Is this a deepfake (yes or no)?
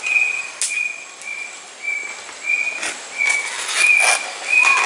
no